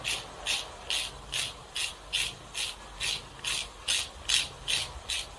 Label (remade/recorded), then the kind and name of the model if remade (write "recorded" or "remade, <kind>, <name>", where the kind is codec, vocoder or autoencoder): recorded